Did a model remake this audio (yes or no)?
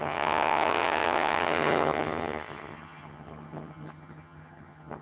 yes